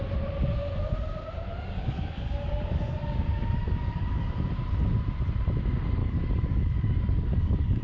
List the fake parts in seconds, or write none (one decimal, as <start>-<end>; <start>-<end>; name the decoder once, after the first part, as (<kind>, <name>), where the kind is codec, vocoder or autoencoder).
1.5-4.5 (codec, DAC); 6.0-7.8

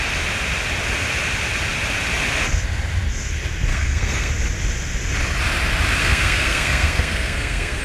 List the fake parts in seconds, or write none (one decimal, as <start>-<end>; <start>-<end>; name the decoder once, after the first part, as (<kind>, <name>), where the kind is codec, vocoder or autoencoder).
3.7-4.3 (codec, SNAC); 6.0-7.8

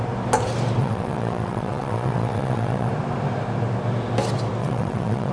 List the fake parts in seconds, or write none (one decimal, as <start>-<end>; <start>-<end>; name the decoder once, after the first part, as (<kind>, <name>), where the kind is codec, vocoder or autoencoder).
0.8-2.9 (vocoder, WaveNeXt); 4.6-5.3

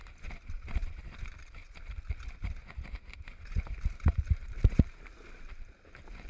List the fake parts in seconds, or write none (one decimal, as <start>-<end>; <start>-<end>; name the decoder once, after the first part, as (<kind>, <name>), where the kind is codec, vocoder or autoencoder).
1.0-1.6 (vocoder, BigVGAN v2); 3.9-6.3

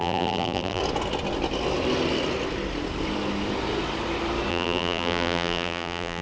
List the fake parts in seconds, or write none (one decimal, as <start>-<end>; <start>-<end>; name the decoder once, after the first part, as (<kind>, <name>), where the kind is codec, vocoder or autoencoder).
0.0-0.8 (vocoder, BigVGAN v2); 4.5-6.2